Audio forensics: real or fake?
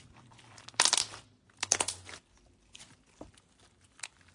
fake